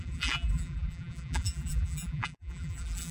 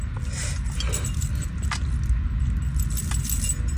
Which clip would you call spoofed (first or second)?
first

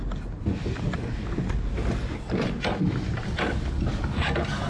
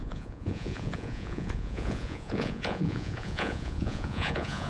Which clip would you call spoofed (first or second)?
second